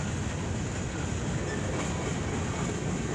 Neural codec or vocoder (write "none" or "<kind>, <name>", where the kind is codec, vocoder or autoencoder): none